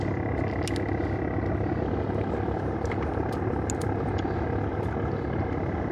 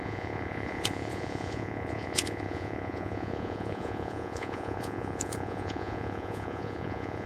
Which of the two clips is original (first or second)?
first